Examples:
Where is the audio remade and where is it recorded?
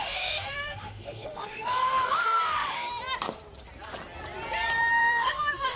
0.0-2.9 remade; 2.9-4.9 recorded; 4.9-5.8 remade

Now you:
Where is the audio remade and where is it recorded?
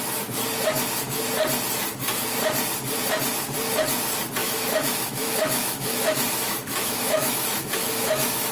0.0-4.4 recorded; 4.4-8.5 remade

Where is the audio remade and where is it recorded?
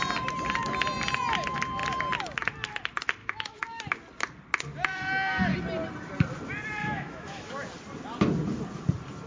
0.0-3.2 recorded; 3.2-3.8 remade; 3.8-6.8 recorded; 6.8-7.5 remade; 7.5-9.3 recorded